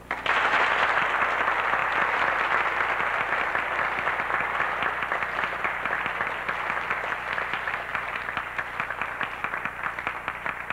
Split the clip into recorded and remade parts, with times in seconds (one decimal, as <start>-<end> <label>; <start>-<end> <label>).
0.0-10.7 recorded

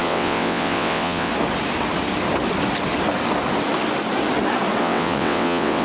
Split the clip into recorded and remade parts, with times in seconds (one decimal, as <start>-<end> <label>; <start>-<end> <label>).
0.0-1.3 remade; 1.3-4.8 recorded; 4.8-5.8 remade

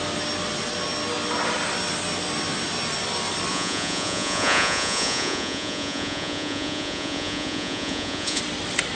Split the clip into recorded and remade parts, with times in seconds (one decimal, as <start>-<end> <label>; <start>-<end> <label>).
0.0-3.5 recorded; 3.5-8.4 remade; 8.4-9.0 recorded

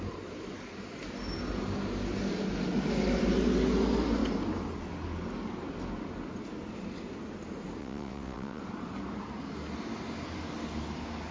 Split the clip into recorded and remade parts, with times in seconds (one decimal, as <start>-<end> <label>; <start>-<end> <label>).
0.0-7.8 recorded; 7.8-8.6 remade; 8.6-11.3 recorded